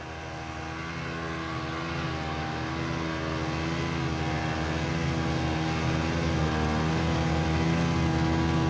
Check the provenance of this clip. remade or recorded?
recorded